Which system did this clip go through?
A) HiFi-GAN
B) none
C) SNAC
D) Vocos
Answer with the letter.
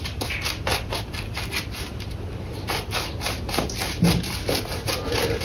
B